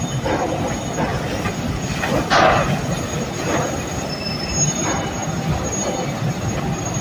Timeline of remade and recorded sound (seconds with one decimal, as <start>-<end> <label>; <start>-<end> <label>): 0.0-7.0 recorded